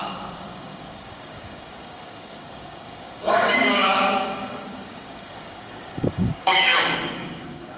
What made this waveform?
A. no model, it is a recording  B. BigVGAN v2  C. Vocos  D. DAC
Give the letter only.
D